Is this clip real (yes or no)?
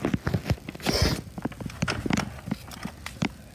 yes